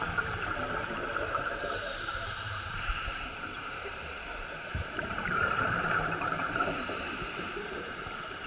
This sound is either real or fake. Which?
fake